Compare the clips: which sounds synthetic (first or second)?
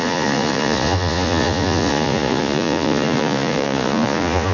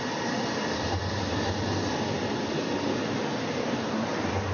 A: first